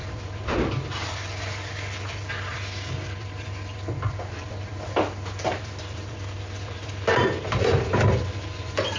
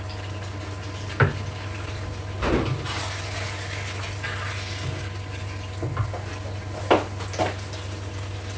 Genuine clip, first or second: second